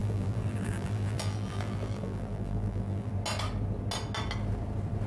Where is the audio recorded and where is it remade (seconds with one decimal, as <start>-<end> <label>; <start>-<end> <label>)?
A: 0.0-3.1 remade; 3.1-5.1 recorded